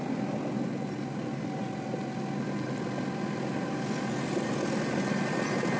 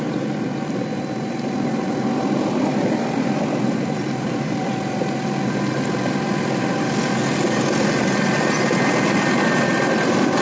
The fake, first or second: second